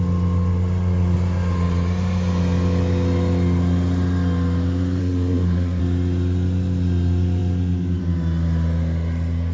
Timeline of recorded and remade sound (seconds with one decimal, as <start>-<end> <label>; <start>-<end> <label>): 0.0-5.0 recorded; 5.0-5.8 remade; 5.8-9.5 recorded